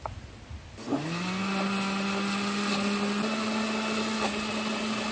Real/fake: real